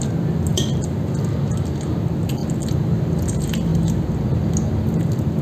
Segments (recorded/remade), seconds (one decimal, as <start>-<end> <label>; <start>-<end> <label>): 0.0-5.4 recorded